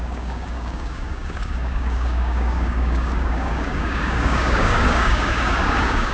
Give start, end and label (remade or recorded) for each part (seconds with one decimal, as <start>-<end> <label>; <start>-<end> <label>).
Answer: 0.0-6.1 remade